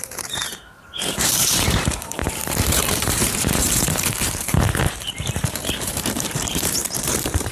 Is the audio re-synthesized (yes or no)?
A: yes